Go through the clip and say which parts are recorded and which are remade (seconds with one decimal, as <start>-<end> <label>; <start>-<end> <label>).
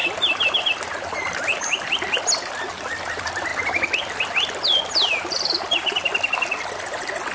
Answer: 0.0-7.3 recorded